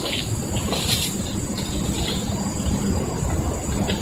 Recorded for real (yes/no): yes